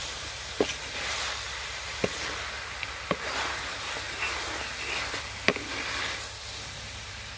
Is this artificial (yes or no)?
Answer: no